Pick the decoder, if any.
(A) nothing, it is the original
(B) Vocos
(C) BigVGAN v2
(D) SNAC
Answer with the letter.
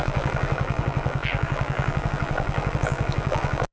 C